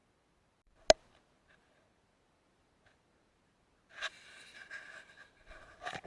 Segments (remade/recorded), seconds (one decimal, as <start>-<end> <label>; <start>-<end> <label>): 0.0-6.1 recorded